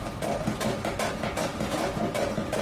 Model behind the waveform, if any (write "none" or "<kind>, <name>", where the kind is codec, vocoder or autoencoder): none